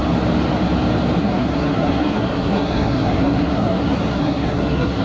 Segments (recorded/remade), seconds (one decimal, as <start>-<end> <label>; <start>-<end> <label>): 0.0-1.2 recorded; 1.2-5.0 remade